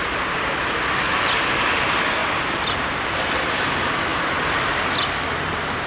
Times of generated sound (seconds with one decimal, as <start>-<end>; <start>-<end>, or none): 2.2-3.1